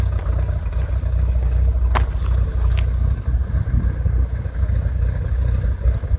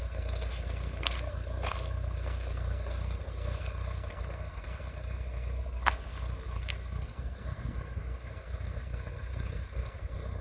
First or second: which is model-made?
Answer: second